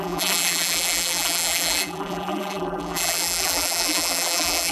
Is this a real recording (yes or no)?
no